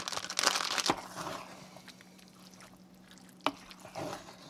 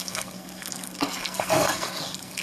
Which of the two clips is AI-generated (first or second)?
second